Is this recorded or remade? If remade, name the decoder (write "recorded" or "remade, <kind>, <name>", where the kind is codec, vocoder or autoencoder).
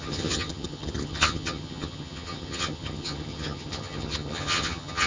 remade, vocoder, HiFi-GAN